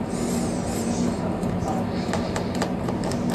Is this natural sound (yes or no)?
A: yes